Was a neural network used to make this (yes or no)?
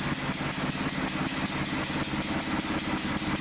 no